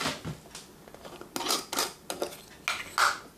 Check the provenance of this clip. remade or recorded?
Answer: recorded